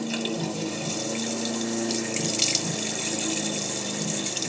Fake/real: real